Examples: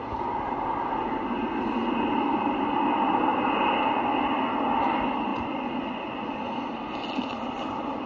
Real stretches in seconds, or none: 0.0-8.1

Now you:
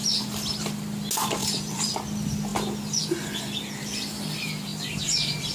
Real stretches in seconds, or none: 0.0-1.4; 1.9-4.7

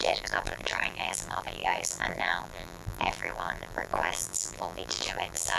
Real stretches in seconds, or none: none

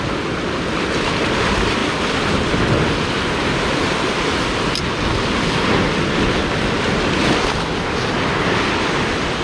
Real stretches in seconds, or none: 0.0-9.4

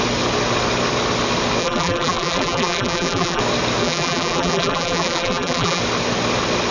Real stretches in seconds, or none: 0.0-1.6; 3.4-3.8; 5.8-6.7

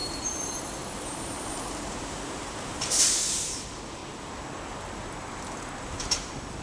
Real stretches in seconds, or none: 4.0-5.8

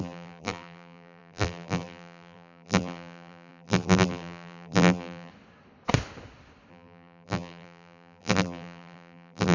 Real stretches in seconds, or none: 5.3-6.7

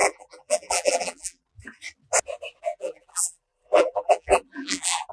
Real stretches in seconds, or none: 1.5-2.6